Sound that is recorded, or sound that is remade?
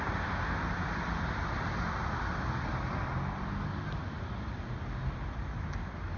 recorded